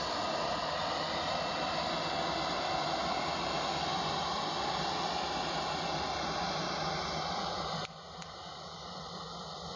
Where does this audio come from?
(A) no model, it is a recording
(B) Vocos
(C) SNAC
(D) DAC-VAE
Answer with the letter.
A